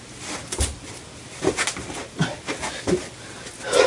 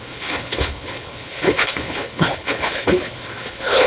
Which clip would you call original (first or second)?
first